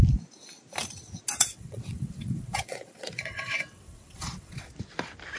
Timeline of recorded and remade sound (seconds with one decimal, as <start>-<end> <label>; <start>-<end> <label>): 0.0-1.5 recorded; 1.5-4.7 remade; 4.7-5.4 recorded